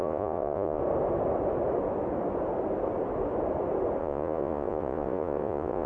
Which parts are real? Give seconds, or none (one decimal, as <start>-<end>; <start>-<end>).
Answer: 0.8-4.0

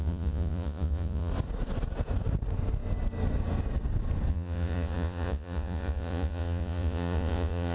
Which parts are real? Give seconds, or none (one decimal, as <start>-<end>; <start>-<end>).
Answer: 1.3-4.3